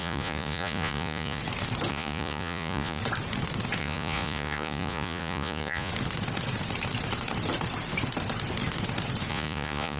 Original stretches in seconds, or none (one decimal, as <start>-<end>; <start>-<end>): 1.4-1.9; 3.0-3.8; 5.9-9.3